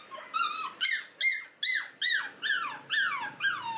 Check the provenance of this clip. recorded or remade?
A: recorded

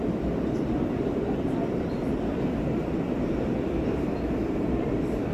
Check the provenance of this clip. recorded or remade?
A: remade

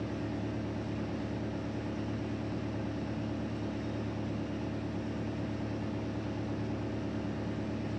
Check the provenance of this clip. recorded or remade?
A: recorded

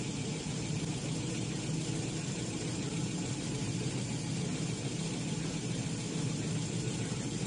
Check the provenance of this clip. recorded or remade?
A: recorded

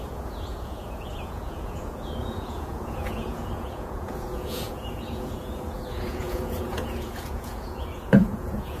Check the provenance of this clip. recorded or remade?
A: remade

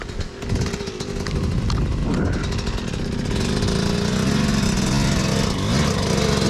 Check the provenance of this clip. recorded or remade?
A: recorded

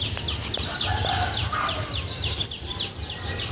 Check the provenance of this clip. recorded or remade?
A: recorded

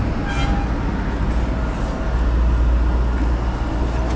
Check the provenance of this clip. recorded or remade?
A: recorded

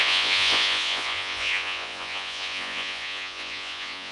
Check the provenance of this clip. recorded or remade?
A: remade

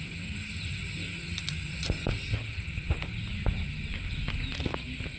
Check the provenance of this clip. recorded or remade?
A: recorded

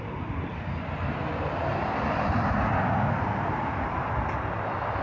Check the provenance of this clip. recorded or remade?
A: recorded